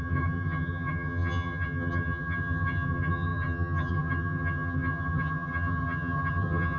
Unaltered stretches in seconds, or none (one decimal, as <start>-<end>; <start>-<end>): none